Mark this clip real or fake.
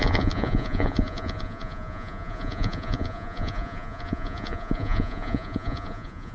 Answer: fake